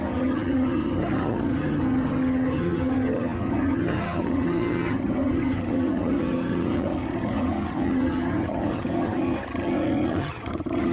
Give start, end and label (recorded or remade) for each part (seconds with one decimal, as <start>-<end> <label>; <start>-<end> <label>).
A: 0.0-10.9 remade